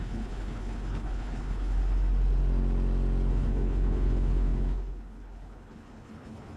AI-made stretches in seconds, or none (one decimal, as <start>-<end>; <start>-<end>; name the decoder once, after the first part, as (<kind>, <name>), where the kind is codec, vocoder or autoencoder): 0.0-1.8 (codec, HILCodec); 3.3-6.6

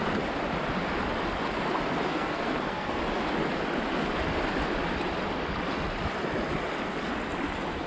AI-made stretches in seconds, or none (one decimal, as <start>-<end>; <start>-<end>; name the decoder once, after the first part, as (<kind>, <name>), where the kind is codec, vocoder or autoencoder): 2.1-3.0 (codec, SNAC)

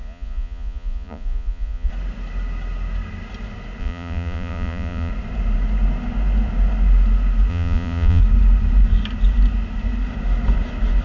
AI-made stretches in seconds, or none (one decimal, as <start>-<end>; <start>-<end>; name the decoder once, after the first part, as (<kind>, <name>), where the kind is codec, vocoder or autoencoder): 0.0-1.9 (vocoder, Vocos); 3.8-5.1; 7.5-8.2

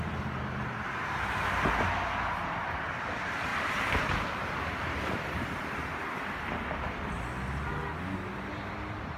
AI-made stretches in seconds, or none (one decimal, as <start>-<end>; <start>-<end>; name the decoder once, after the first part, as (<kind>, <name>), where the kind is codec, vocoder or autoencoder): 3.5-5.4 (vocoder, BigVGAN v2)